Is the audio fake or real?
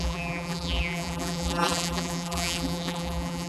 fake